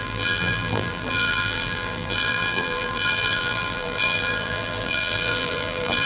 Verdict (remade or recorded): remade